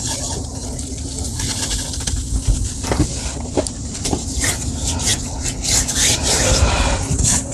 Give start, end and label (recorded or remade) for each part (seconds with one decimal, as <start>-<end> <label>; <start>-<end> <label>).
0.0-0.6 remade; 0.6-3.7 recorded; 3.7-5.1 remade; 5.1-5.9 recorded; 5.9-7.5 remade